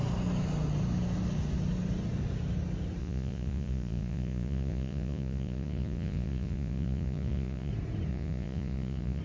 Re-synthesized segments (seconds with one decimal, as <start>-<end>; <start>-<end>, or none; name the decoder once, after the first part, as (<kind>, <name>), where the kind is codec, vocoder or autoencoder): 3.0-7.7 (vocoder, Vocos); 8.1-9.2